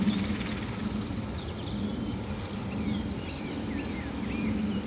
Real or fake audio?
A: real